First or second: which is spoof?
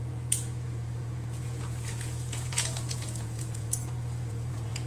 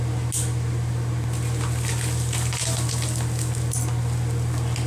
first